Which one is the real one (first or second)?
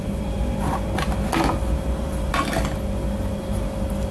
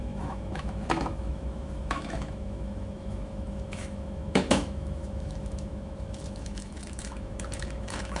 first